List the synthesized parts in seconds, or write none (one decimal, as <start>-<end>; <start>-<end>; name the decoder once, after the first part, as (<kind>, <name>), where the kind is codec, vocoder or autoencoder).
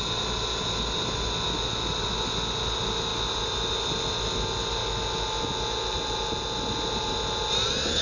none